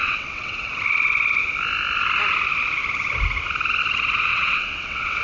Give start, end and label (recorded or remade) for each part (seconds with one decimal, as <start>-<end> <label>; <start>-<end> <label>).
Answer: 0.0-0.7 remade; 0.7-4.3 recorded; 4.3-5.2 remade